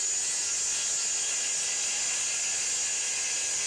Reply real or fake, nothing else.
real